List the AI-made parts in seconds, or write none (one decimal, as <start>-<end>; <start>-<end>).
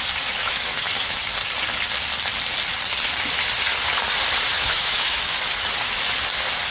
0.4-1.2; 4.5-5.2